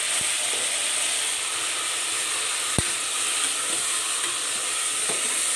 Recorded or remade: recorded